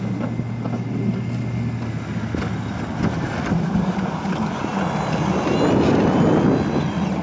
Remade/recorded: recorded